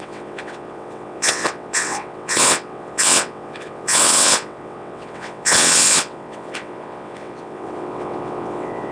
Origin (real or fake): fake